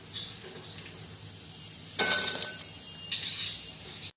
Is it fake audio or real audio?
real